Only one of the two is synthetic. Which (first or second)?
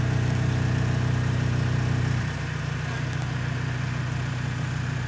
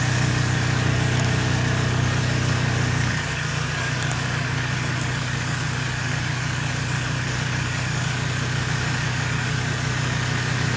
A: second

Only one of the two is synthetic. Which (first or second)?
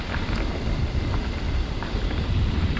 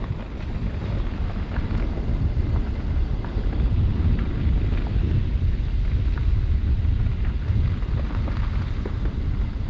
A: first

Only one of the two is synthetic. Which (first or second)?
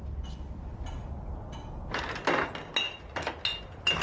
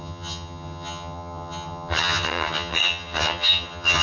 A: second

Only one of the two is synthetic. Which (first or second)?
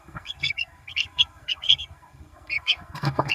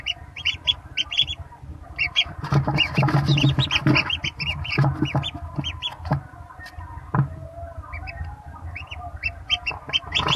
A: first